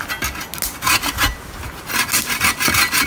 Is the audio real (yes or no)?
yes